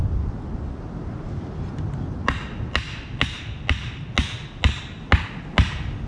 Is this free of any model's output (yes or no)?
yes